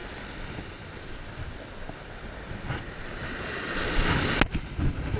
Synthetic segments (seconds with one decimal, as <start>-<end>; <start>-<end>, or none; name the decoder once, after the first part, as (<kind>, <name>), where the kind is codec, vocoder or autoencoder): none